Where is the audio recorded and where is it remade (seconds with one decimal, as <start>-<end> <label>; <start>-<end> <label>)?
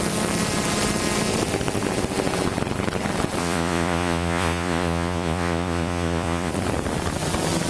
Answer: 0.0-3.4 recorded; 3.4-6.5 remade; 6.5-7.7 recorded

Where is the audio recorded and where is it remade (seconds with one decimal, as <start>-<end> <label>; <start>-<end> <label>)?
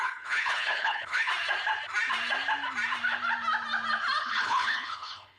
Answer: 0.0-1.3 remade; 1.3-4.2 recorded; 4.2-5.4 remade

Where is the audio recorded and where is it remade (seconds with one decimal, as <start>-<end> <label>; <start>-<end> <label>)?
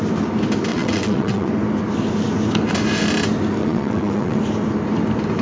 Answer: 0.0-0.7 recorded; 0.7-1.5 remade; 1.5-3.6 recorded; 3.6-4.4 remade; 4.4-5.4 recorded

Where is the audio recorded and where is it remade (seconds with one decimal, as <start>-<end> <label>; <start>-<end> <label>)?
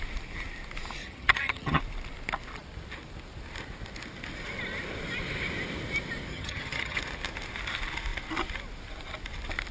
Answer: 0.0-1.0 recorded; 1.0-1.8 remade; 1.8-6.3 recorded; 6.3-7.0 remade; 7.0-9.7 recorded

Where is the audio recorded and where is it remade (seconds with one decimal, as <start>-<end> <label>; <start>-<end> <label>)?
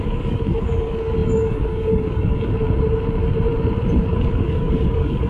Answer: 0.0-2.6 remade; 2.6-4.2 recorded; 4.2-5.3 remade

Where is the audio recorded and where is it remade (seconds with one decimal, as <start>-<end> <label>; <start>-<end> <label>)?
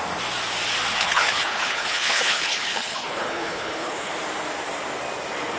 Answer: 0.0-0.9 recorded; 0.9-4.1 remade; 4.1-5.6 recorded